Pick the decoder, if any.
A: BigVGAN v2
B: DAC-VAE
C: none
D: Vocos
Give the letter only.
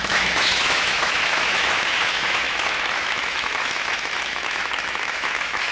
B